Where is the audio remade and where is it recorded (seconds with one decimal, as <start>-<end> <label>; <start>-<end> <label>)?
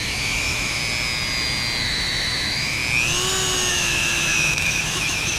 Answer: 0.0-0.8 remade; 0.8-1.8 recorded; 1.8-2.8 remade; 2.8-3.7 recorded; 3.7-5.4 remade